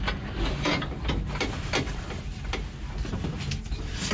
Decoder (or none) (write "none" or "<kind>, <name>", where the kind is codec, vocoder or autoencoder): none